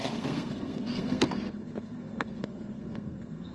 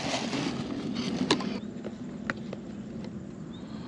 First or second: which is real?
second